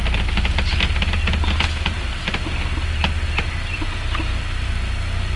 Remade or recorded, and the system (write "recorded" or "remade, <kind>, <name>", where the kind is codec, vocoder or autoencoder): recorded